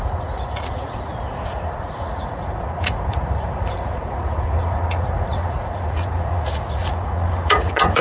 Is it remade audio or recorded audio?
remade